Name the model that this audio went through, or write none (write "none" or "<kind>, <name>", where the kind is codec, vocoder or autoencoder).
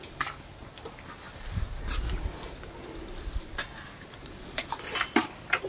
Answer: none